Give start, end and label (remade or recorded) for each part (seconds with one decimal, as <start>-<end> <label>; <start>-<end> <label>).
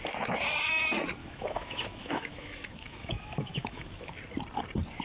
0.0-1.2 recorded; 1.2-4.1 remade; 4.1-5.0 recorded